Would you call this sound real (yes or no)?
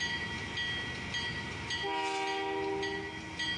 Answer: yes